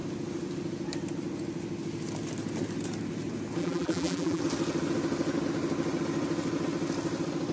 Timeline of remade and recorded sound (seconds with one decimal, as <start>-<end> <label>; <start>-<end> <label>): 0.0-3.6 recorded; 3.6-4.4 remade; 4.4-7.5 recorded